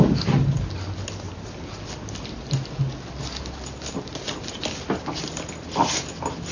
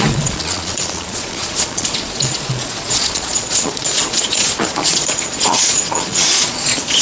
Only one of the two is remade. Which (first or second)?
second